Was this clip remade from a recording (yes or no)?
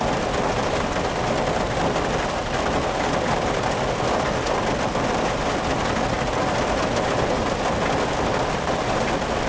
no